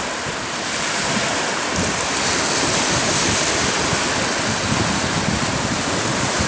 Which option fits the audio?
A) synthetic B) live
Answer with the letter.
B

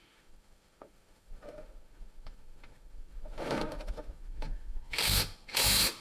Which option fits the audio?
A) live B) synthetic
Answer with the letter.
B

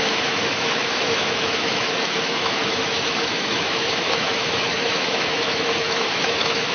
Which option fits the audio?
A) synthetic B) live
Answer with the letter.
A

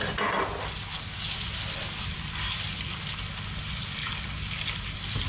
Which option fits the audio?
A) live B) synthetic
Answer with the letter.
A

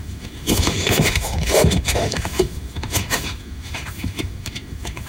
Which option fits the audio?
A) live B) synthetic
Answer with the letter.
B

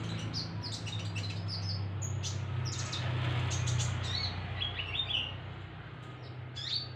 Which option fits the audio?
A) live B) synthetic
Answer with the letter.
A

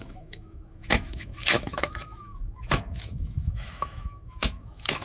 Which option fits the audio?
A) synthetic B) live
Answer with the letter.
A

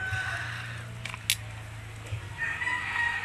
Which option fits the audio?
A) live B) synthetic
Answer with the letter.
A